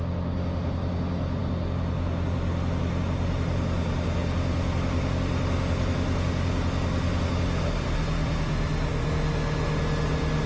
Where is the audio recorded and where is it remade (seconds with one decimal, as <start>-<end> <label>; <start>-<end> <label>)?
0.0-10.5 recorded